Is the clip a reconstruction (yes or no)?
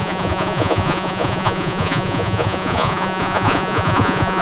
yes